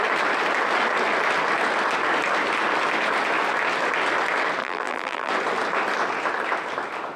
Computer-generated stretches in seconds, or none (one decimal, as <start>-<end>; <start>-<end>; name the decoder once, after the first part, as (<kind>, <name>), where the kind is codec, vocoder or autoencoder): 4.6-5.3 (vocoder, BigVGAN v2)